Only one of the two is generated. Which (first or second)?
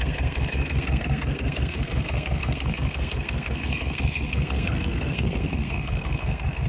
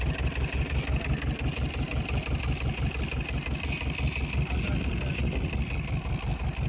first